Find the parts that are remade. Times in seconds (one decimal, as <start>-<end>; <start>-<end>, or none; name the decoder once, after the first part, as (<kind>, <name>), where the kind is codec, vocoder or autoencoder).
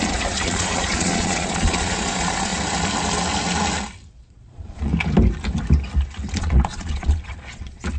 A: 0.0-2.5 (vocoder, Vocos); 4.1-4.9; 6.4-8.0